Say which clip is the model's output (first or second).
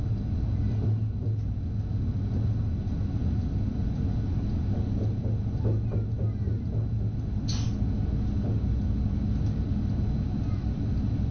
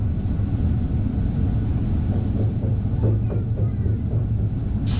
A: second